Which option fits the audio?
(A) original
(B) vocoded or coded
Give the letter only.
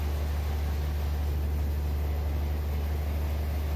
A